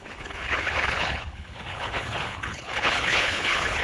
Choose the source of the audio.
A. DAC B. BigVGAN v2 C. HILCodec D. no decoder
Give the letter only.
C